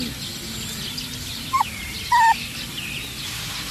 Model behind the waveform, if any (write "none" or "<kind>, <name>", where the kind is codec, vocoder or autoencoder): none